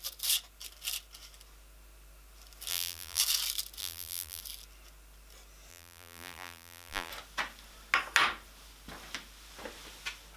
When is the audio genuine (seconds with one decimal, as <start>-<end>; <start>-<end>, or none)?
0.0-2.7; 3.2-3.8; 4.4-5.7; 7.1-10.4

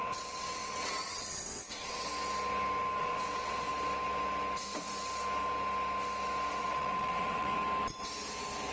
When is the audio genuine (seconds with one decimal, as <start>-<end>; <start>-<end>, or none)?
2.1-3.0; 3.7-6.5; 7.6-8.7

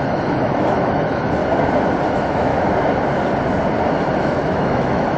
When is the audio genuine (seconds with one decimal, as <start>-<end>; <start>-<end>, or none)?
1.4-2.1; 2.5-4.2

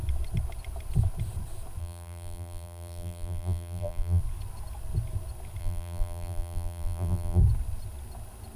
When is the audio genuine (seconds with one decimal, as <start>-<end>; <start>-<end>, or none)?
0.0-1.8; 4.2-5.6; 7.4-8.6

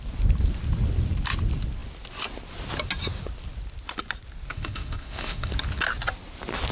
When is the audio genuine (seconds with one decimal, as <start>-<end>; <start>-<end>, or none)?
0.0-4.5; 5.5-6.7

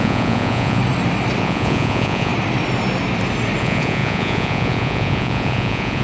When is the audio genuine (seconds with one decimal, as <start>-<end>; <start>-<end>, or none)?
0.8-1.4; 2.3-3.6